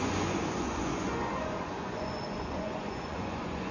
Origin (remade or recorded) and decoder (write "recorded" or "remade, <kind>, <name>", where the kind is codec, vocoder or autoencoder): remade, vocoder, Vocos